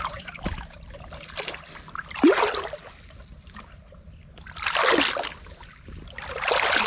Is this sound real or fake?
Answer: real